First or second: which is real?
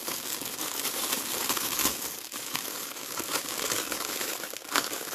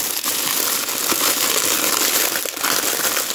second